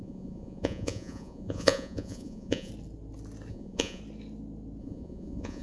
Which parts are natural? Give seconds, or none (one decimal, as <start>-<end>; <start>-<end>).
2.7-3.5; 4.0-4.8